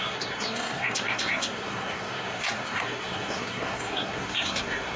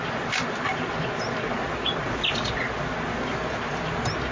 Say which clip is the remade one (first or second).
first